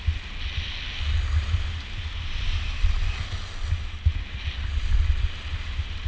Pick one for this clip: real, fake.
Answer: real